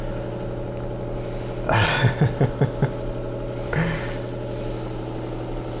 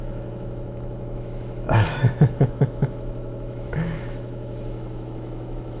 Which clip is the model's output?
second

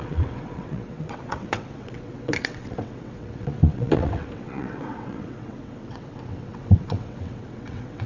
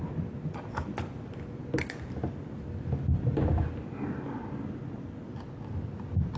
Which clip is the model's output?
first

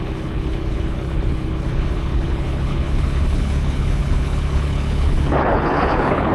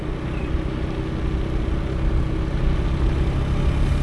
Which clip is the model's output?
first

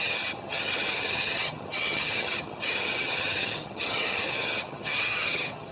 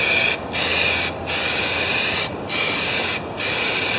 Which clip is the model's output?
first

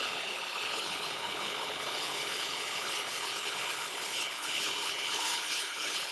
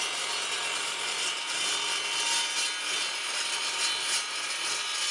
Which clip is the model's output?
first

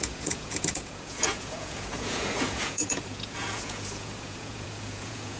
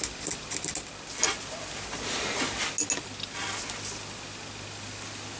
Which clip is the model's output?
first